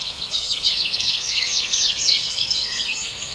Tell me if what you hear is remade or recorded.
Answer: remade